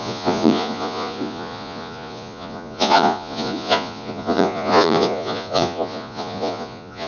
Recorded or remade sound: remade